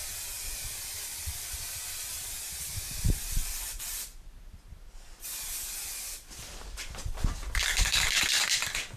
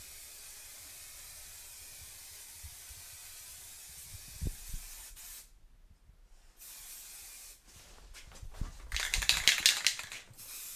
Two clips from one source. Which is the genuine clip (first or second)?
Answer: second